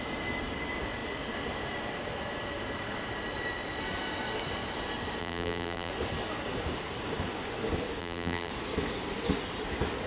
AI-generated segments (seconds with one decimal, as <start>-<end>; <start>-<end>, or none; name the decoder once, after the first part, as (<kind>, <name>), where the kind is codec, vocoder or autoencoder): 5.2-5.9 (vocoder, BigVGAN v2); 8.0-8.5

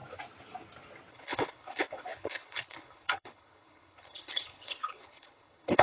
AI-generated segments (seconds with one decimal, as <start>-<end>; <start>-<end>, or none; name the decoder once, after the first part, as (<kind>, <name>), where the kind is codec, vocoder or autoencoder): 1.1-5.8 (codec, HILCodec)